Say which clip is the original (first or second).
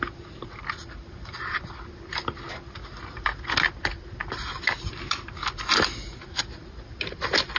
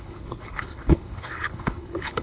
first